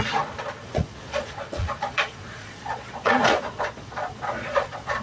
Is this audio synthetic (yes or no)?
yes